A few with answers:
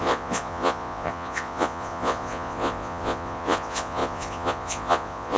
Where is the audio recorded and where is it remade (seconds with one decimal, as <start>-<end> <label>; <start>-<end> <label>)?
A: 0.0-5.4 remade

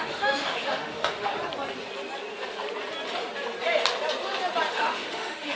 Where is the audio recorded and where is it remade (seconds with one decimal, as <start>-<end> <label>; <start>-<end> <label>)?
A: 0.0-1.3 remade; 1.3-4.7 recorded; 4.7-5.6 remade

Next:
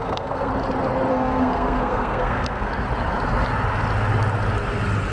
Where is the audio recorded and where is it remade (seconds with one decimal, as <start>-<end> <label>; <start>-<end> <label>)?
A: 0.0-0.5 remade; 0.5-1.1 recorded; 1.1-2.7 remade; 2.7-5.1 recorded

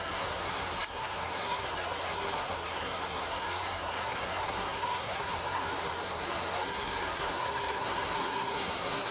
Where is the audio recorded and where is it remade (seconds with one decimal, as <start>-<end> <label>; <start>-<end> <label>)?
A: 0.0-9.1 remade

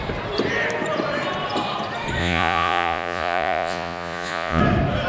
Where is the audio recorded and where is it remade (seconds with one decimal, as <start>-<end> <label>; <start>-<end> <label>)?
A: 0.0-2.2 recorded; 2.2-4.6 remade; 4.6-5.1 recorded

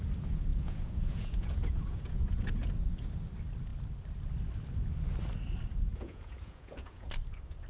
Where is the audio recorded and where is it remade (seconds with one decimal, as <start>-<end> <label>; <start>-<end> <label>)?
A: 0.0-0.5 recorded; 0.5-2.7 remade; 2.7-5.9 recorded; 5.9-7.1 remade; 7.1-7.7 recorded

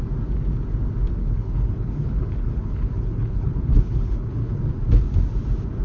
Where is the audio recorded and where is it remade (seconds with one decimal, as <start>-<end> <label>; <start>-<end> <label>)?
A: 0.0-1.2 recorded; 1.2-4.6 remade; 4.6-5.8 recorded